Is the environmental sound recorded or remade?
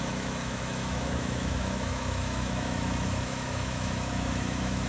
remade